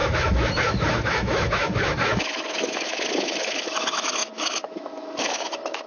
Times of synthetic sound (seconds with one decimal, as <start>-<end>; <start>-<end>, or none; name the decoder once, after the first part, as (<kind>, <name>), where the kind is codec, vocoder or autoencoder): 0.0-5.9 (autoencoder, DAC-VAE)